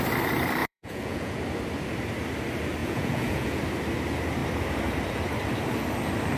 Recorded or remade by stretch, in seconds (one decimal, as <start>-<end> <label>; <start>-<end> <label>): 0.0-0.6 recorded; 0.6-1.4 remade; 1.4-2.8 recorded; 2.8-3.6 remade; 3.6-6.4 recorded